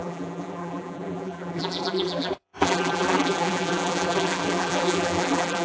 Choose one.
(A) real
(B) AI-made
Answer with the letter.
B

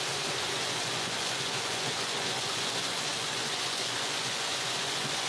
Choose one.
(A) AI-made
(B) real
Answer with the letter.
A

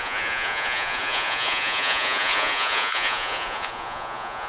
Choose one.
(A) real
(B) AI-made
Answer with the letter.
B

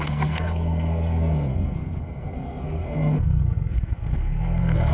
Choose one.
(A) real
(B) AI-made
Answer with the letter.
B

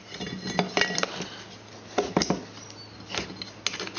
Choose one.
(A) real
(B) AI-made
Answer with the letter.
A